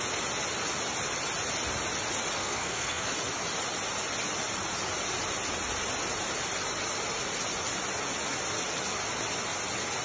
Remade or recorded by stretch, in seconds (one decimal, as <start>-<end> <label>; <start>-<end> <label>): 0.0-2.4 recorded; 2.4-3.1 remade; 3.1-10.0 recorded